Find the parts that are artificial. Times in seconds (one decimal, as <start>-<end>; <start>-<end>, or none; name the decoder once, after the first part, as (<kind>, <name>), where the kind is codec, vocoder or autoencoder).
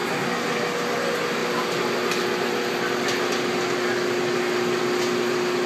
none